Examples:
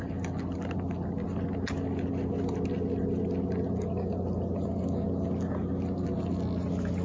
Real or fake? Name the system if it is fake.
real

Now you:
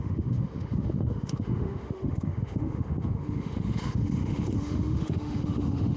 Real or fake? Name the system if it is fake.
fake, autoencoder, DAC-VAE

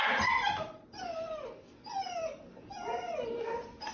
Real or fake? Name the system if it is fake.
real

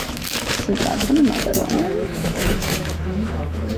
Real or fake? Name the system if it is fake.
fake, autoencoder, DAC-VAE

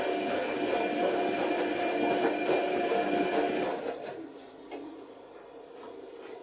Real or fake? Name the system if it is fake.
real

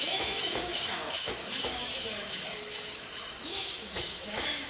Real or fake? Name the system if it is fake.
fake, autoencoder, DAC-VAE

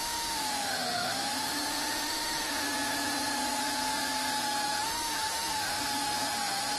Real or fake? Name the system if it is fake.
fake, autoencoder, DAC-VAE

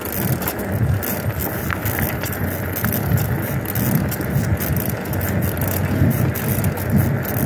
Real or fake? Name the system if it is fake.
real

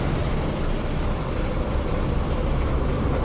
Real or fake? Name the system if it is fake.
real